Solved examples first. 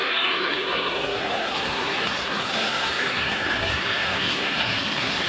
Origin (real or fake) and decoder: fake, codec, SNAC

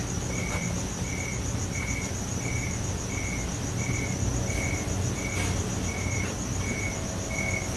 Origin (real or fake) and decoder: real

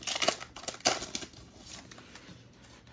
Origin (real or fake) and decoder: real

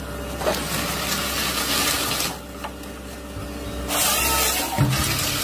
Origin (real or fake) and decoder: real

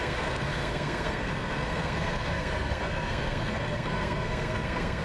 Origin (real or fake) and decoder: fake, codec, SNAC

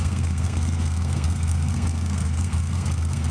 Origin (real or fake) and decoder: fake, codec, SNAC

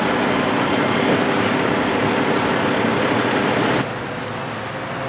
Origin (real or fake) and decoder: real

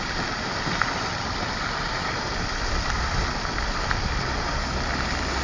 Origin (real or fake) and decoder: real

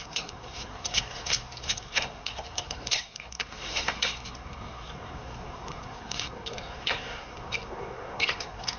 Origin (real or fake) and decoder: fake, codec, SNAC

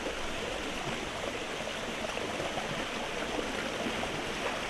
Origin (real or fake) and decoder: real